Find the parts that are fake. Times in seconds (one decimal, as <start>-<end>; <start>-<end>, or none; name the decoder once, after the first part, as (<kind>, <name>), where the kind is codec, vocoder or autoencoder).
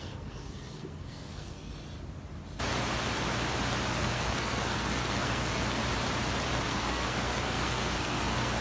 0.0-1.7 (codec, SNAC); 3.9-5.8; 6.6-8.6